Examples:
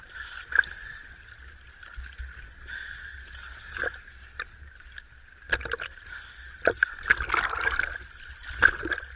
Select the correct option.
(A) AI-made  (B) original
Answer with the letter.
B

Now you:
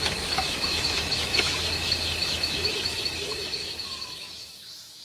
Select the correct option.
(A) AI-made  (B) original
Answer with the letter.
A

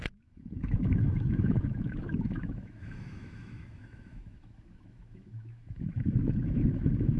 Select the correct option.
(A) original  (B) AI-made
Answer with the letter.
B